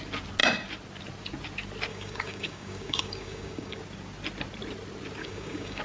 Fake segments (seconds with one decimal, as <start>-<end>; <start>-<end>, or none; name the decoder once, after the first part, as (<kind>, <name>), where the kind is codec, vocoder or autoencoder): 1.9-3.8 (codec, DAC); 5.2-5.8